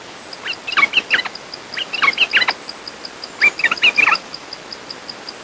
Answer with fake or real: real